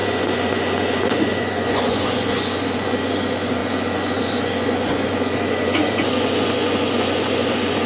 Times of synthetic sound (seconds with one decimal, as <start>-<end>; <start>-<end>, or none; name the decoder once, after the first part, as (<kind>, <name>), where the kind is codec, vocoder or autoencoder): 0.0-7.9 (vocoder, Vocos)